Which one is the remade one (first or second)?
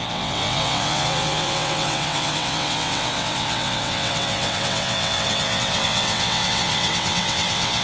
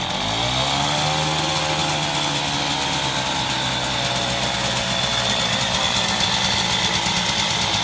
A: first